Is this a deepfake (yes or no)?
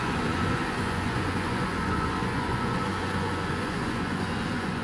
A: yes